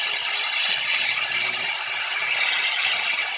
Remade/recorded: recorded